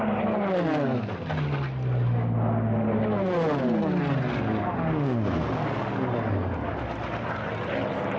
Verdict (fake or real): real